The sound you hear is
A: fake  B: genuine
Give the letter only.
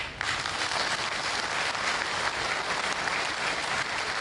B